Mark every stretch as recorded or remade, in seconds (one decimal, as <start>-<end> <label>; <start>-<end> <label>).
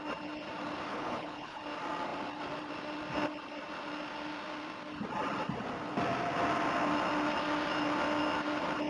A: 0.0-0.9 recorded; 0.9-1.6 remade; 1.6-8.9 recorded